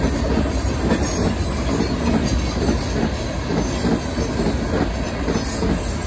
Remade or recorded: recorded